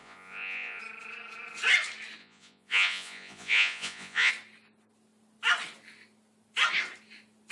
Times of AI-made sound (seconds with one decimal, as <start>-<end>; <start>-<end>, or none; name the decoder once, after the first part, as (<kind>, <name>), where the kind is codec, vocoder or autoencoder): 0.0-0.8 (vocoder, Vocos); 2.2-4.3